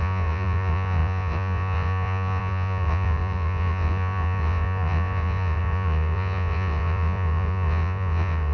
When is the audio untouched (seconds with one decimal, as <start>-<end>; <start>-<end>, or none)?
none